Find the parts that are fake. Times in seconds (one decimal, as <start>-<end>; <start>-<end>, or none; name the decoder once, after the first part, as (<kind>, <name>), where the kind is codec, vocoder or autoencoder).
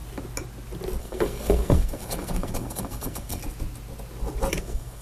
1.0-3.4 (codec, SNAC); 4.6-5.0